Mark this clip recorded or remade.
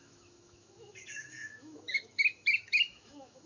remade